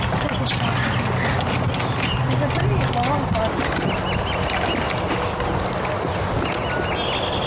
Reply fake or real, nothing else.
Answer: real